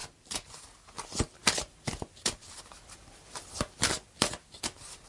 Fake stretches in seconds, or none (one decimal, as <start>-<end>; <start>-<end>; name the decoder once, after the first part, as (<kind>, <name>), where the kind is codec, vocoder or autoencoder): none